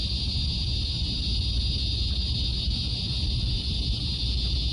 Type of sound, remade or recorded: recorded